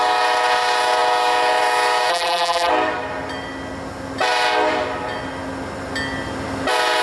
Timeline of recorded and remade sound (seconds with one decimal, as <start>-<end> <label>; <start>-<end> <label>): 0.0-2.1 recorded; 2.1-2.7 remade; 2.7-7.0 recorded